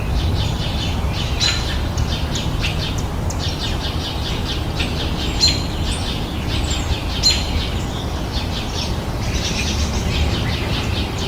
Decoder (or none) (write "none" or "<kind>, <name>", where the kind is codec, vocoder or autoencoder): none